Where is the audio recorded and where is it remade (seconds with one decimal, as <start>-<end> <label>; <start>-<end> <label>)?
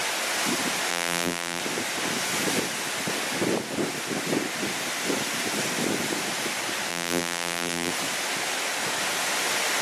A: 0.0-0.9 recorded; 0.9-1.6 remade; 1.6-6.9 recorded; 6.9-7.9 remade; 7.9-9.8 recorded